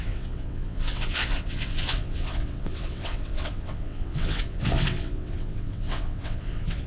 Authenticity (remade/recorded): remade